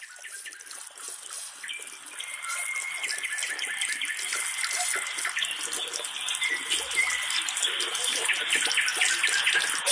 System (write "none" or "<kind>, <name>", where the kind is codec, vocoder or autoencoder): none